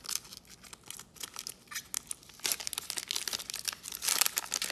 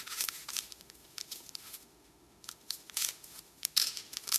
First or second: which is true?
first